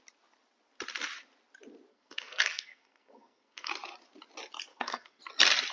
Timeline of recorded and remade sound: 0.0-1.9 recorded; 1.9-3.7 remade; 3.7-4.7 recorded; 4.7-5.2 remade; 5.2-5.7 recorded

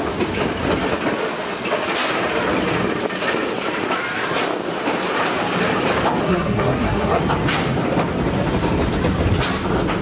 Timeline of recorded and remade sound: 0.0-6.2 recorded; 6.2-7.2 remade; 7.2-10.0 recorded